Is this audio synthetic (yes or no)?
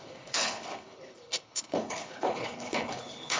yes